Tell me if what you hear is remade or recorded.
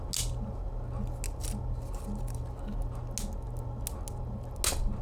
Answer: recorded